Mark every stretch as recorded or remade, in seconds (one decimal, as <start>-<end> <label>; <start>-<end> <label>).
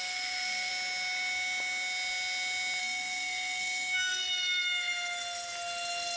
0.0-0.7 remade; 0.7-2.8 recorded; 2.8-4.1 remade; 4.1-6.2 recorded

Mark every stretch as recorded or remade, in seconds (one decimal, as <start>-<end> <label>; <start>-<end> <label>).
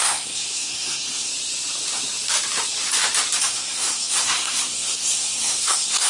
0.0-1.3 remade; 1.3-3.4 recorded; 3.4-6.1 remade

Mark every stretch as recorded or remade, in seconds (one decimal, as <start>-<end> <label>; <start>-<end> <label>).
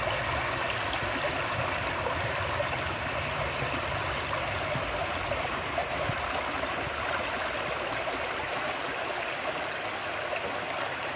0.0-11.2 recorded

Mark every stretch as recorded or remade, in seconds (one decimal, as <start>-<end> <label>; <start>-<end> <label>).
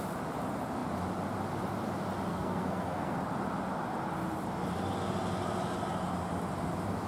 0.0-2.3 recorded; 2.3-3.2 remade; 3.2-7.1 recorded